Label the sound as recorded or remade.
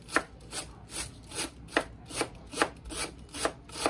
recorded